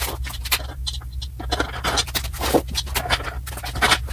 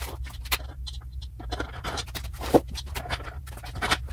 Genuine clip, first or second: first